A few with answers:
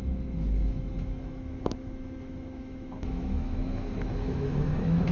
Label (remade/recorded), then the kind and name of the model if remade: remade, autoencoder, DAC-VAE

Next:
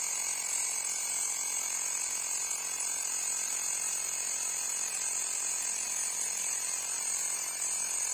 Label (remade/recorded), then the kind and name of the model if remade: recorded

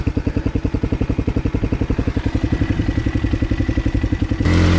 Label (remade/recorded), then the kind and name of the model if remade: recorded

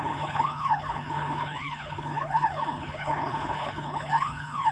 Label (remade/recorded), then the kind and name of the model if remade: remade, codec, HILCodec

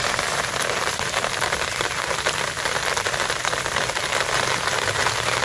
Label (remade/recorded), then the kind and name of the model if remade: remade, vocoder, BigVGAN v2